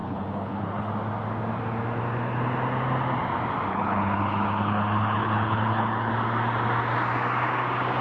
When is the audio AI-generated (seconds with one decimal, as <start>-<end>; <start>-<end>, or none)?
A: 0.0-0.9; 3.7-6.1